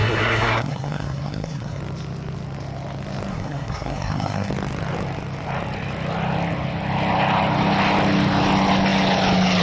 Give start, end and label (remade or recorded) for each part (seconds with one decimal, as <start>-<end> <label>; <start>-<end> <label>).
0.0-1.8 remade; 1.8-3.3 recorded; 3.3-4.5 remade; 4.5-9.6 recorded